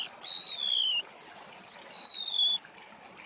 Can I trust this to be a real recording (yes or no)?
yes